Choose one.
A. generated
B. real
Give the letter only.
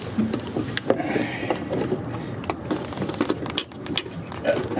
B